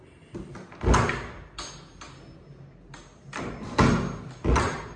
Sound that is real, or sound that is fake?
real